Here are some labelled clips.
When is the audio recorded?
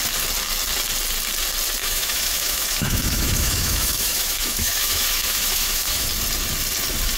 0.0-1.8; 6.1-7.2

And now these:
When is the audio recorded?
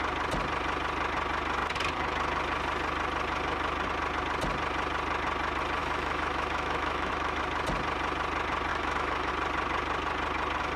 0.0-5.8; 7.4-8.7; 9.3-10.8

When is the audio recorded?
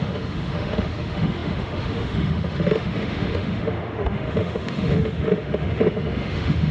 none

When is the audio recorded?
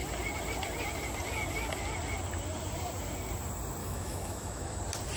0.0-3.8; 4.8-5.2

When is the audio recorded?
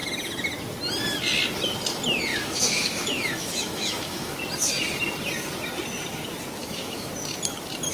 0.0-2.3; 4.4-6.6; 7.1-7.9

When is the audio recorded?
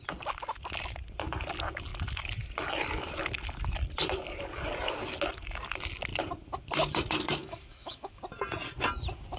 0.0-7.4; 8.2-9.4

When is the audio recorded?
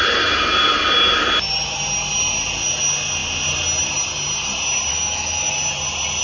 0.0-4.9; 5.5-6.2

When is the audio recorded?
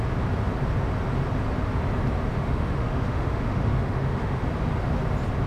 0.0-2.3; 4.4-5.5